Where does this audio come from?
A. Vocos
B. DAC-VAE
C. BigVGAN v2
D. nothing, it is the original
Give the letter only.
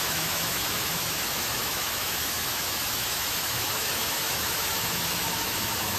B